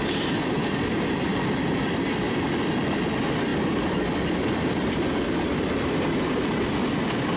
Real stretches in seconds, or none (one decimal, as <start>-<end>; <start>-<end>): 0.0-7.4